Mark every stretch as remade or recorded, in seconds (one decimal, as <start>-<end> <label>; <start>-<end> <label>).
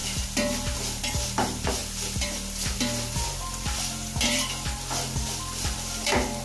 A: 0.0-6.4 recorded